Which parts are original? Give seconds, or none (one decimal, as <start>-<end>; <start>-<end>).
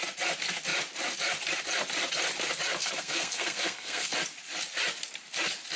0.0-2.8; 4.1-5.8